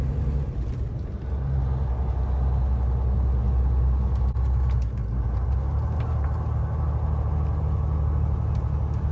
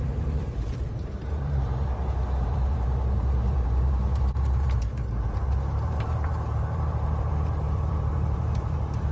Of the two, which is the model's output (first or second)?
second